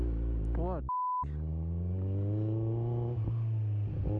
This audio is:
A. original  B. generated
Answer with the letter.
A